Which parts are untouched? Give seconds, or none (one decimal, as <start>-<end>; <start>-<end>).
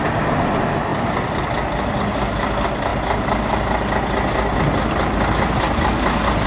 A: 0.0-6.5